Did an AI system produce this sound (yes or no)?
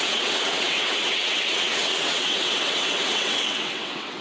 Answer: yes